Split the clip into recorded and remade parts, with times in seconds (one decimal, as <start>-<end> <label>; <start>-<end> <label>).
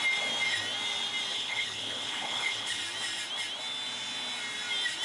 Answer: 0.0-1.3 recorded; 1.3-2.8 remade; 2.8-5.0 recorded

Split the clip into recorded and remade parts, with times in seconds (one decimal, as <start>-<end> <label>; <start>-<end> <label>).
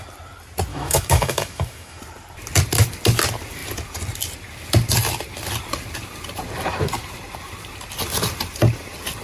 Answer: 0.0-0.7 recorded; 0.7-2.0 remade; 2.0-9.2 recorded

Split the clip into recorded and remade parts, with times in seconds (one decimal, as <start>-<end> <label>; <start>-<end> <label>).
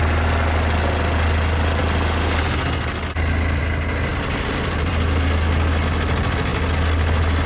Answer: 0.0-4.1 recorded; 4.1-4.9 remade; 4.9-7.5 recorded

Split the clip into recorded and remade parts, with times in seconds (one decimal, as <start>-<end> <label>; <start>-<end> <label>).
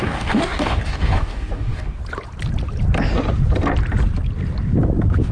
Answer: 0.0-2.0 remade; 2.0-5.3 recorded